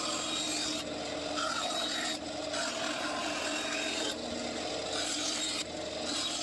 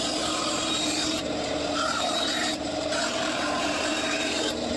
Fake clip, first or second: second